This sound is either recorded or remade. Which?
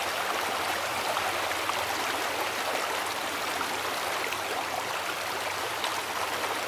recorded